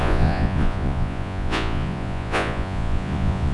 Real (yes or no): no